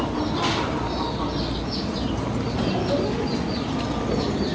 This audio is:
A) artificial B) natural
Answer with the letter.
B